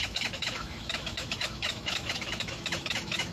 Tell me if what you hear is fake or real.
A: fake